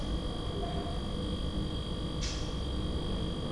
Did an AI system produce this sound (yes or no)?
no